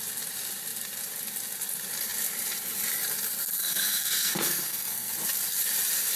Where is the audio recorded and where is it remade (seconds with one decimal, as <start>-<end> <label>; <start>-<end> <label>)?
0.0-3.6 recorded; 3.6-5.1 remade; 5.1-6.2 recorded